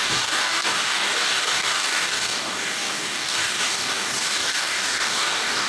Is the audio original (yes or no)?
no